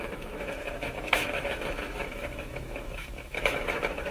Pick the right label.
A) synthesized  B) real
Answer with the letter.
A